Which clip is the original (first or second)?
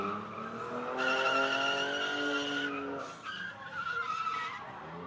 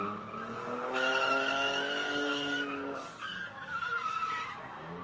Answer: first